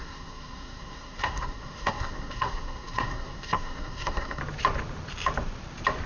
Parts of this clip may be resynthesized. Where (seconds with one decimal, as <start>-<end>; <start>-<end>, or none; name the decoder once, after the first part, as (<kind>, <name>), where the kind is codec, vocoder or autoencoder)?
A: 0.0-4.4 (codec, SNAC)